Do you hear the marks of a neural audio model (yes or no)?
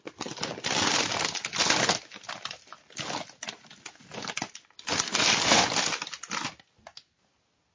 no